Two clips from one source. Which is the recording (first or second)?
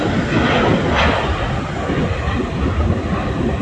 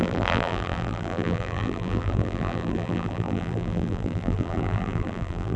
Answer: first